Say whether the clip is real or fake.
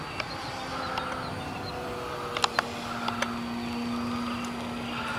real